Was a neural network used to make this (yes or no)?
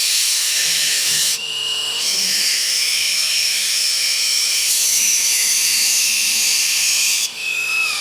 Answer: yes